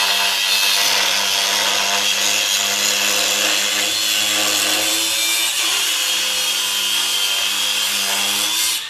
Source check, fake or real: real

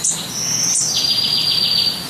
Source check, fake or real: real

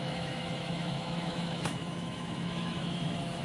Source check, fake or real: fake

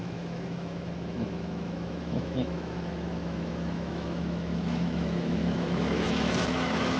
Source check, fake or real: fake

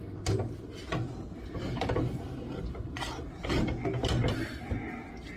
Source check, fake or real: real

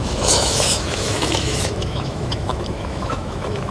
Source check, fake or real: fake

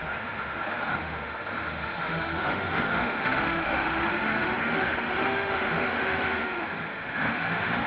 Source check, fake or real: fake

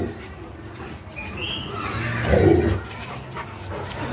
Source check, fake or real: real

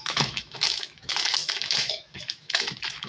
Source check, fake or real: fake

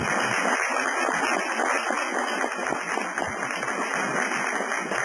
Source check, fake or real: real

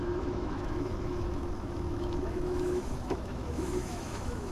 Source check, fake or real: fake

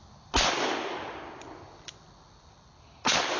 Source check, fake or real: real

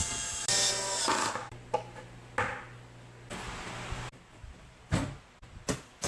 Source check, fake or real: real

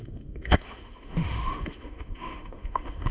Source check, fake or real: fake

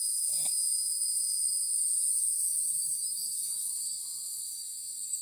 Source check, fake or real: fake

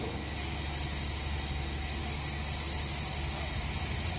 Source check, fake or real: real